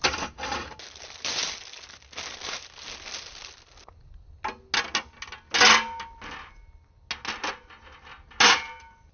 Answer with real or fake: real